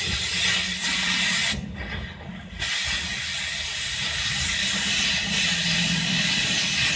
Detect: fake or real real